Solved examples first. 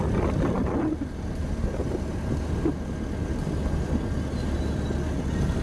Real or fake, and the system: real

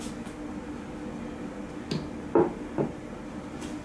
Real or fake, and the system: real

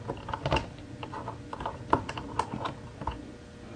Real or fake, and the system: real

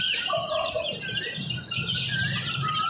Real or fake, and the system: real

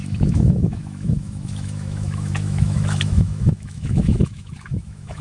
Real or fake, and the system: fake, autoencoder, DAC-VAE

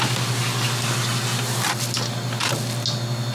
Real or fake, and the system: real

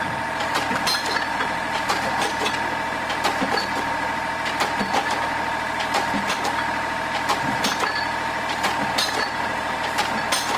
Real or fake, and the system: fake, vocoder, BigVGAN v2